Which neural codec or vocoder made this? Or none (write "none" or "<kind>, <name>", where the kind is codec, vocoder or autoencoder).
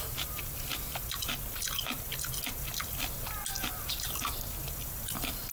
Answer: none